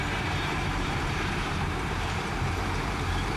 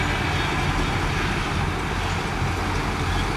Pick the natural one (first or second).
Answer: second